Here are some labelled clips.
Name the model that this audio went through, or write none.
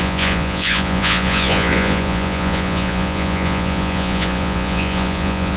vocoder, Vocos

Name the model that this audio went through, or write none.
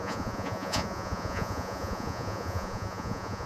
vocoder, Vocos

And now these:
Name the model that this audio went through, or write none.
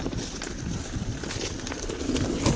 none